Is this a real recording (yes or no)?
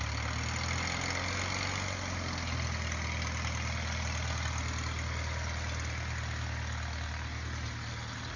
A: yes